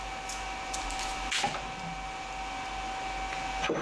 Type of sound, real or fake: real